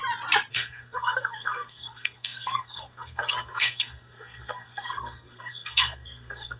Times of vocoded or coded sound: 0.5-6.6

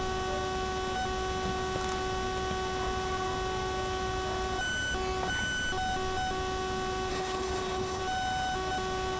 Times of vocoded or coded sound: 7.1-8.0

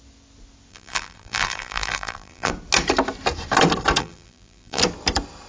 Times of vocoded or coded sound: 0.7-2.5; 4.0-4.8

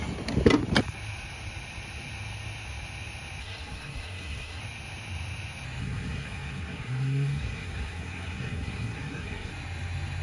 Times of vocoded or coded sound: 3.4-4.6; 5.8-9.5

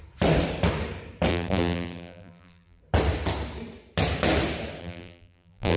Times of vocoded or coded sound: 1.3-2.8; 4.8-5.8